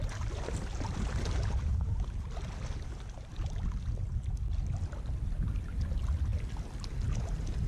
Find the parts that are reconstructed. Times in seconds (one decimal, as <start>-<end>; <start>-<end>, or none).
none